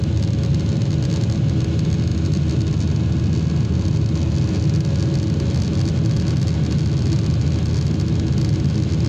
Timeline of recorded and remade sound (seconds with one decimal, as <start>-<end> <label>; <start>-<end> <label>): 0.0-9.1 recorded